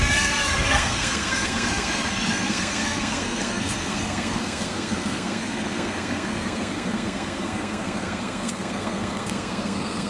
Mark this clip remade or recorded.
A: remade